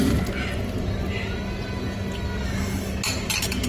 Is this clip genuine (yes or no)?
yes